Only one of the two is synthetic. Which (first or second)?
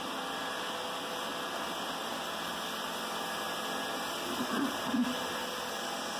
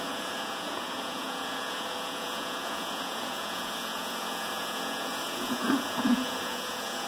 second